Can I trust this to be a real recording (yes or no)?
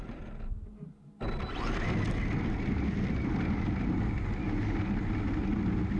yes